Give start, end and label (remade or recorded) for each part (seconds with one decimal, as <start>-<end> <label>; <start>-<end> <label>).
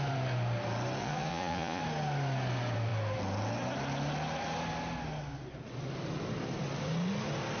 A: 0.0-1.0 recorded; 1.0-1.8 remade; 1.8-7.6 recorded